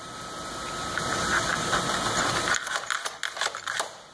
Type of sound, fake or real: real